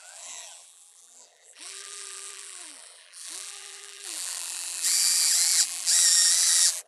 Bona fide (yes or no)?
no